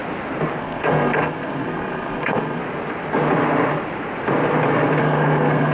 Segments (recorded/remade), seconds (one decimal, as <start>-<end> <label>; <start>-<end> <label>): 0.0-0.6 recorded; 0.6-2.6 remade; 2.6-5.0 recorded; 5.0-5.7 remade